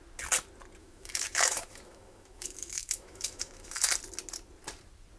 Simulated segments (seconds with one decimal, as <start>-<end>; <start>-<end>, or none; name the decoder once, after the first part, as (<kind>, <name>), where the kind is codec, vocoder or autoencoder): 0.8-3.9 (autoencoder, DAC-VAE)